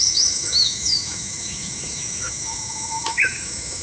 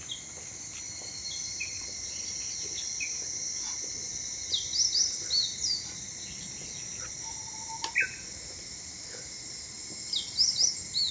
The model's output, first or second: first